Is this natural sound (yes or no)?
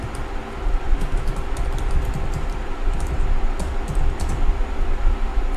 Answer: yes